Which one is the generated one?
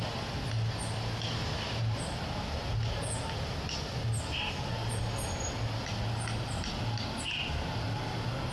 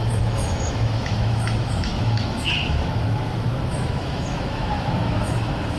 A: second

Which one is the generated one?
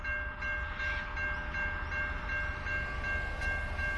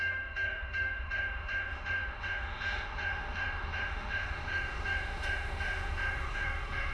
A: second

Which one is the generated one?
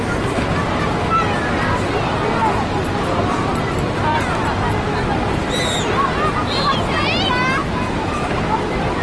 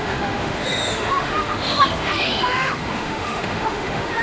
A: second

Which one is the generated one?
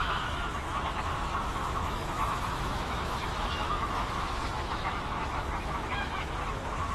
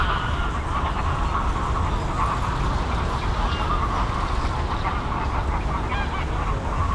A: first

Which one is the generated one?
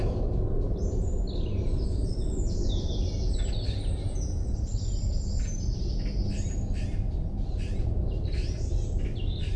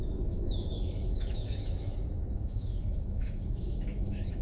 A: second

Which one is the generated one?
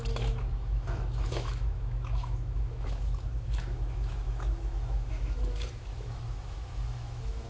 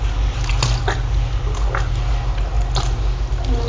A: first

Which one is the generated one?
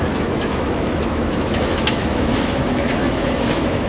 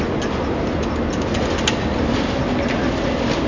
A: first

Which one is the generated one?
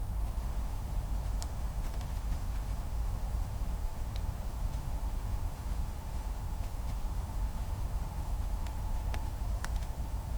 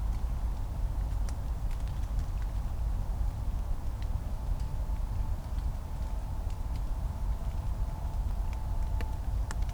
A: first